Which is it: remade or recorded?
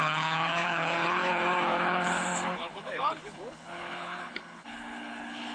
remade